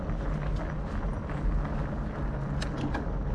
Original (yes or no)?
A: yes